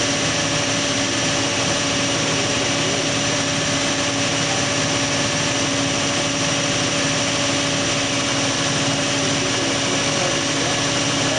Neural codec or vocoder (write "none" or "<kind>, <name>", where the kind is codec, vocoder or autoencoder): none